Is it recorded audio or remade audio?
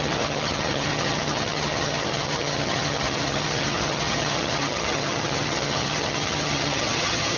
remade